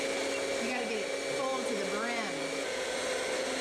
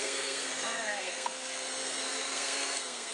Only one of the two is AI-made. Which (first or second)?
second